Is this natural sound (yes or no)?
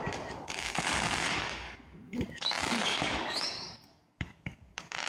no